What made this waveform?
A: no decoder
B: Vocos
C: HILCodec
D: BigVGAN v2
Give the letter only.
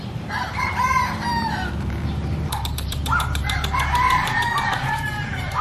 D